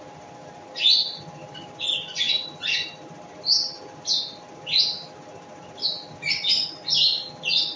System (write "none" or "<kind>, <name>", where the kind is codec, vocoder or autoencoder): none